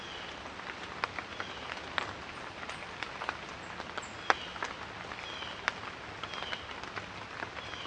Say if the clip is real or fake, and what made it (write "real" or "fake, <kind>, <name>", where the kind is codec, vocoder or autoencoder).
real